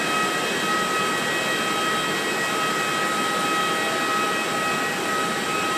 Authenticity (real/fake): real